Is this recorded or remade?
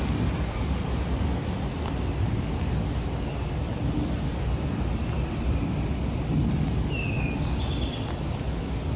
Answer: recorded